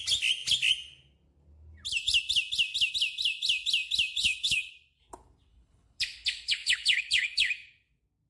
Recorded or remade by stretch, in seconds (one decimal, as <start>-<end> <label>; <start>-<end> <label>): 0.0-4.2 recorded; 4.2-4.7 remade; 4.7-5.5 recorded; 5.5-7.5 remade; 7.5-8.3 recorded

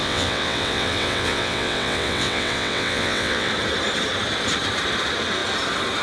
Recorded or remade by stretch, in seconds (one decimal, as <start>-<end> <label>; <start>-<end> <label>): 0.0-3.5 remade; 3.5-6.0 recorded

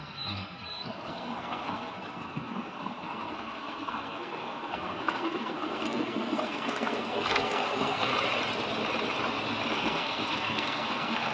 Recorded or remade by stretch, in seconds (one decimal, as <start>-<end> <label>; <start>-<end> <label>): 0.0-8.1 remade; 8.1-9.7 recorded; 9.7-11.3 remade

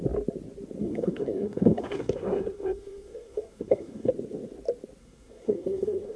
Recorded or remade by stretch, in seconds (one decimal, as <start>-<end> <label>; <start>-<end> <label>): 0.0-0.8 recorded; 0.8-4.1 remade; 4.1-5.0 recorded; 5.0-6.2 remade

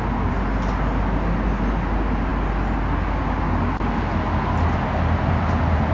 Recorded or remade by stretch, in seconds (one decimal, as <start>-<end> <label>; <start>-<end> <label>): 0.0-5.9 recorded

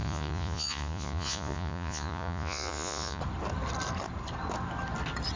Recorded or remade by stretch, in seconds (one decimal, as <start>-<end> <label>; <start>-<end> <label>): 0.0-3.2 remade; 3.2-5.4 recorded

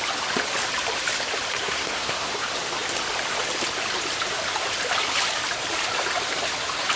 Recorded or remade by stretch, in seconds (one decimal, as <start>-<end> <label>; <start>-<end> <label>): 0.0-1.6 recorded; 1.6-2.3 remade; 2.3-7.0 recorded